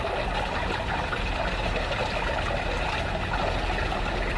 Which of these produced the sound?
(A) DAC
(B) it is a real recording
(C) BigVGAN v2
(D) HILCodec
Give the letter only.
B